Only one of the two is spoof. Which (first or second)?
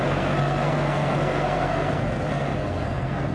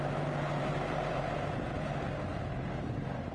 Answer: first